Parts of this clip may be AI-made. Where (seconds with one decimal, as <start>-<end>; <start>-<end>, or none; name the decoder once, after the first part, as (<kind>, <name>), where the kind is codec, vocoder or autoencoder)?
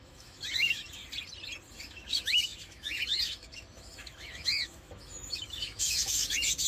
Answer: 0.0-1.0 (autoencoder, DAC-VAE); 1.7-6.7